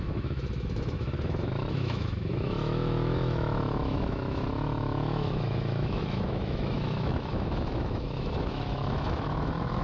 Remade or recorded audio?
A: remade